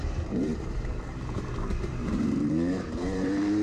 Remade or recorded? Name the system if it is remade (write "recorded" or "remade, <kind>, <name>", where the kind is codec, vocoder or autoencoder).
remade, vocoder, BigVGAN v2